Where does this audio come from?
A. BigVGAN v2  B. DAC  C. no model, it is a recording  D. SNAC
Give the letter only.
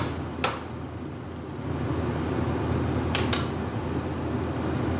C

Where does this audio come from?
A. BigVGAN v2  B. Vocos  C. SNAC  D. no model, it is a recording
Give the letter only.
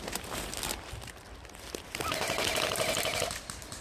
D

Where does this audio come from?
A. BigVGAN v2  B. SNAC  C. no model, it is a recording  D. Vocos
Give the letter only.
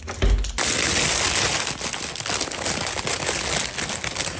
C